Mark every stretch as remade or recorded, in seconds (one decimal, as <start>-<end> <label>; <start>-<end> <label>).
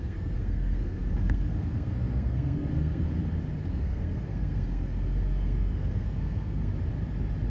0.0-3.1 remade; 3.1-3.7 recorded; 3.7-6.7 remade; 6.7-7.5 recorded